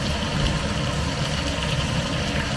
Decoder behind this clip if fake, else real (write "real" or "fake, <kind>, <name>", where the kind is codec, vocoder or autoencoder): fake, vocoder, BigVGAN v2